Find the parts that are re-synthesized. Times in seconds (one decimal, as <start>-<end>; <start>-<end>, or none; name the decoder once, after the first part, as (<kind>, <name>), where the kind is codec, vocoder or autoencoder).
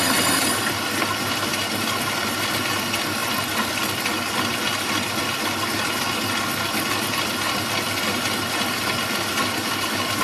none